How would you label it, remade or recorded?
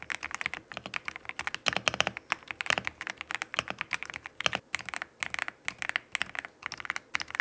recorded